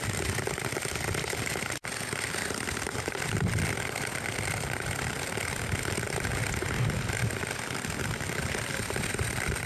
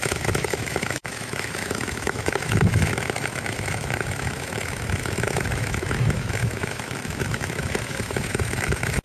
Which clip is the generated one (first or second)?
second